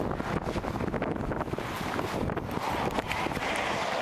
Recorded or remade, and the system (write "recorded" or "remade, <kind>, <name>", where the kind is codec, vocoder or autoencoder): recorded